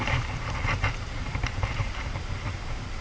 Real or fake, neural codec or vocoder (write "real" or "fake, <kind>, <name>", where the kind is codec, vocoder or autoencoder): fake, vocoder, BigVGAN v2